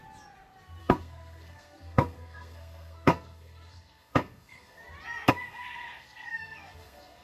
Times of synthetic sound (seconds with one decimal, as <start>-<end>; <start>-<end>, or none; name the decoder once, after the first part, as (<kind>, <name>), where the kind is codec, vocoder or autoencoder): 0.8-4.8 (codec, SNAC); 5.3-7.2